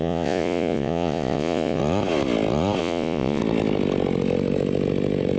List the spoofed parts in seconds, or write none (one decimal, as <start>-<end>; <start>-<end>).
0.0-1.8; 2.8-3.4